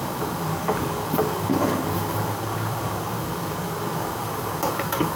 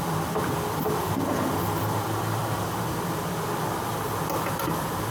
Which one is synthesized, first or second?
first